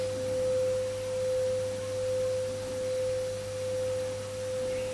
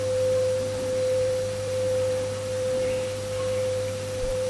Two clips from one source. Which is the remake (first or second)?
second